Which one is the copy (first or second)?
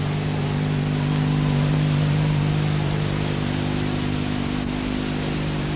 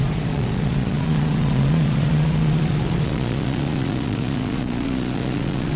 second